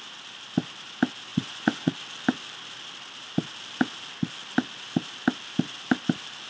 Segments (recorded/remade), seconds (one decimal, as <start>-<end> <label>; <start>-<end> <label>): 0.0-1.3 recorded; 1.3-1.9 remade; 1.9-6.5 recorded